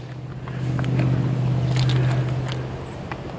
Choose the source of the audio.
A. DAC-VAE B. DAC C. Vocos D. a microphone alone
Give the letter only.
D